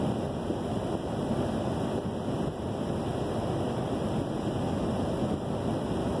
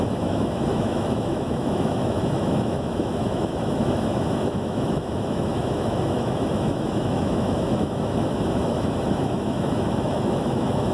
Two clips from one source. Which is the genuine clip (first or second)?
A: first